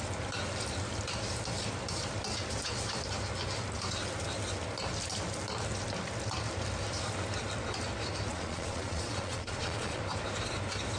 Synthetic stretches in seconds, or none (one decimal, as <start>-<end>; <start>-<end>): 8.3-10.0